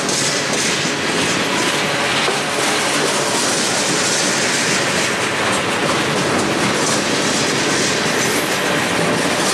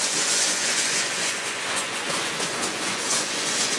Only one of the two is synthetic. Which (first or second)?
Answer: second